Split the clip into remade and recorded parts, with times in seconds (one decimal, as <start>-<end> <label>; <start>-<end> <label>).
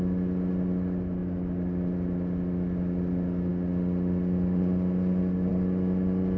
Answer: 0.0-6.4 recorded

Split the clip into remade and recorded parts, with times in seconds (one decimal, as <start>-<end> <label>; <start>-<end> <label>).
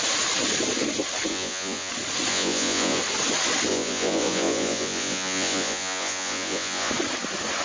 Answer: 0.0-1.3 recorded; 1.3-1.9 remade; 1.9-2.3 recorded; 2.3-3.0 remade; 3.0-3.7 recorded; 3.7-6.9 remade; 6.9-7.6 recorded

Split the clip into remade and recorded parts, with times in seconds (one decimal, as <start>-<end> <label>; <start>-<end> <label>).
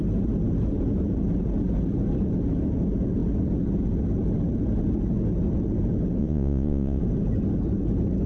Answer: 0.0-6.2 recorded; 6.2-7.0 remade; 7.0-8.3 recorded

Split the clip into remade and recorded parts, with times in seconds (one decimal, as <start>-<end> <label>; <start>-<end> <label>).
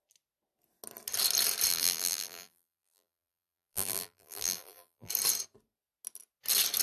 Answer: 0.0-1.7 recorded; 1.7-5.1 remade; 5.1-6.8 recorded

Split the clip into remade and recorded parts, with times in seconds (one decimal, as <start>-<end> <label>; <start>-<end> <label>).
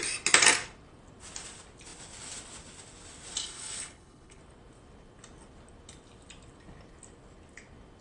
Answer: 0.0-3.4 recorded; 3.4-4.4 remade; 4.4-8.0 recorded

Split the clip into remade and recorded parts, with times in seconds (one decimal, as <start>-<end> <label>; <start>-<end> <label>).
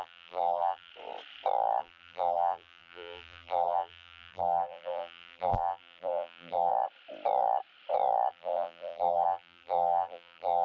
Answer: 0.0-0.9 remade; 0.9-1.8 recorded; 1.8-6.7 remade; 6.7-8.3 recorded; 8.3-10.6 remade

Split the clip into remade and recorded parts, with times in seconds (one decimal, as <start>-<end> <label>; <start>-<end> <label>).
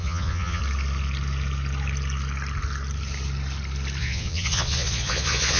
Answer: 0.0-0.6 remade; 0.6-4.0 recorded; 4.0-5.6 remade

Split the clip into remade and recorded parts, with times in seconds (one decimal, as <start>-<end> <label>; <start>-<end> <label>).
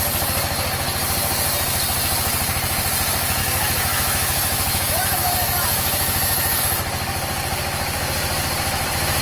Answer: 0.0-3.4 recorded; 3.4-6.6 remade; 6.6-9.2 recorded